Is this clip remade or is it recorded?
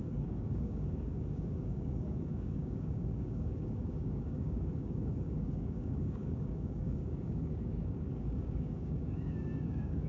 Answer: remade